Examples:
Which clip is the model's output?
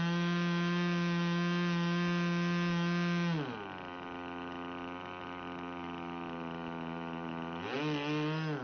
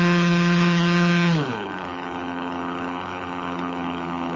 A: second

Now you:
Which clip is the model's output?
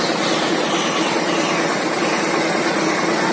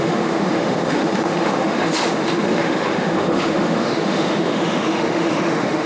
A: second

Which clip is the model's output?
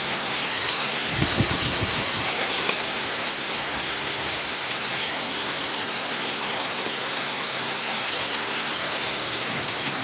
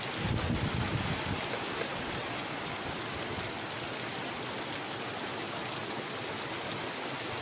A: first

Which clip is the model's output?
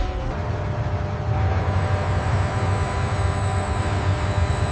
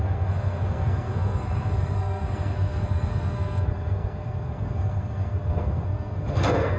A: second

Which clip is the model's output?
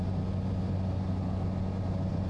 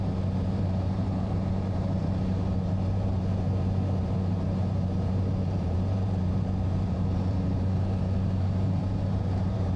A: second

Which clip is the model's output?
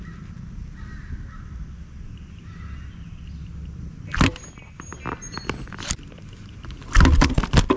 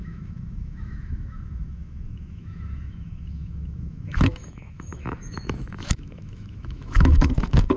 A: second